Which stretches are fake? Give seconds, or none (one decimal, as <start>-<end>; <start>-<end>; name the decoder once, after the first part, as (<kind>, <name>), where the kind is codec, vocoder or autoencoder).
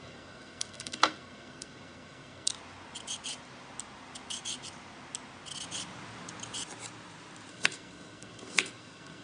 0.0-2.5 (codec, SNAC); 7.5-9.2